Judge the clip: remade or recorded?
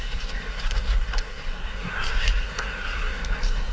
remade